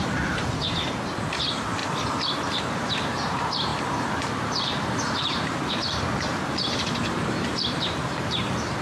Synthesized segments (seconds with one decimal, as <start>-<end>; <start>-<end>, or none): 0.0-0.4; 1.3-1.8; 2.6-8.8